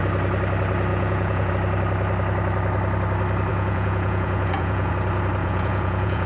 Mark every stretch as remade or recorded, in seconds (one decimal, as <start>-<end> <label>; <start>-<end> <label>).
0.0-0.9 recorded; 0.9-1.5 remade; 1.5-3.5 recorded; 3.5-4.9 remade; 4.9-5.4 recorded; 5.4-6.3 remade